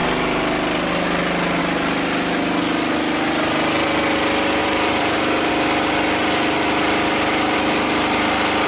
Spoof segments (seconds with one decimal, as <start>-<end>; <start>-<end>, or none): 4.6-5.5